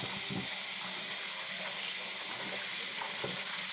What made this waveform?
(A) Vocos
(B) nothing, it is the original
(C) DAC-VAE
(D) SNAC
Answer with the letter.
B